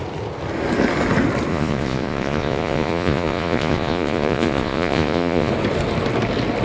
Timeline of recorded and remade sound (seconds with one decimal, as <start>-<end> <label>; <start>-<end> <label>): 0.0-1.5 recorded; 1.5-5.5 remade; 5.5-6.6 recorded